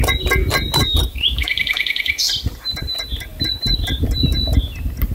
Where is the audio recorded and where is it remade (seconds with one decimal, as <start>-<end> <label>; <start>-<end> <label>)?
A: 0.0-1.1 recorded; 1.1-2.3 remade; 2.3-5.1 recorded